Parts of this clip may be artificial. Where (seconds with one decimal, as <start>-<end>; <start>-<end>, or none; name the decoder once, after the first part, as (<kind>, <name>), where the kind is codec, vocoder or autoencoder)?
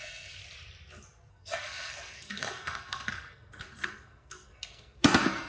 0.0-0.4 (codec, SNAC); 1.3-5.5